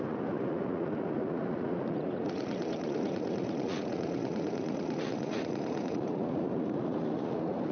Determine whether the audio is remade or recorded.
remade